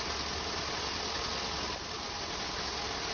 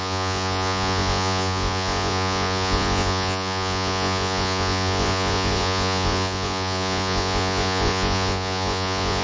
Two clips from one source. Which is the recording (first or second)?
first